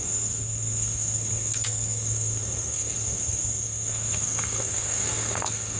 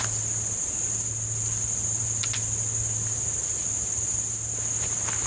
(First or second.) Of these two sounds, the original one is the second